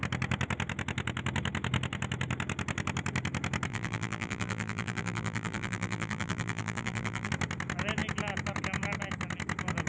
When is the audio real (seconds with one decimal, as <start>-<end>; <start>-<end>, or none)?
0.0-3.7; 7.3-9.9